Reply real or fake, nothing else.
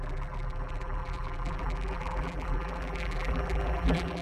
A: fake